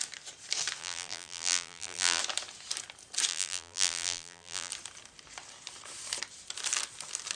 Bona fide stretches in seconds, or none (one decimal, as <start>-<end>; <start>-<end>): 0.0-0.8; 2.2-3.3; 4.7-7.3